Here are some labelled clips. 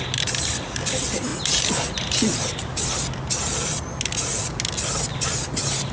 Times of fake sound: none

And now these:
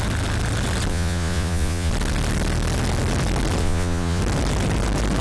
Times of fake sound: 0.9-1.9; 3.6-4.2

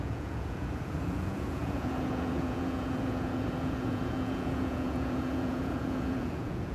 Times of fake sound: 0.0-6.7

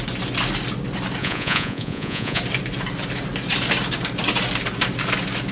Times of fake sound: 1.2-2.4

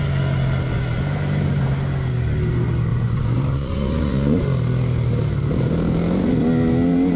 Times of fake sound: 2.9-4.4

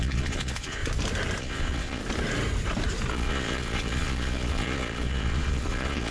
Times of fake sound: 0.0-0.8; 1.4-2.0; 3.1-6.1

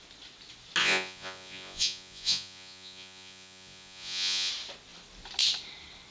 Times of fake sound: 0.8-4.5